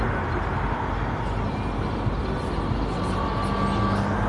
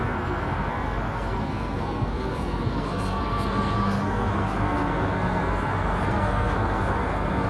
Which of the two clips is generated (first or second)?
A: second